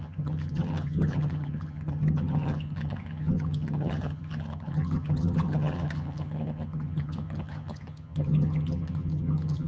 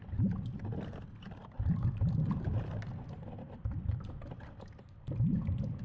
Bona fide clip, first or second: second